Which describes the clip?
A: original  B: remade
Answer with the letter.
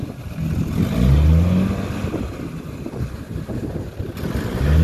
A